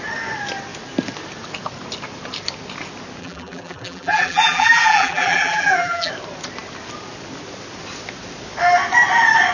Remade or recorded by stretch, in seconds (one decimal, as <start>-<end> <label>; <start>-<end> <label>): 0.0-3.2 recorded; 3.2-6.1 remade; 6.1-9.5 recorded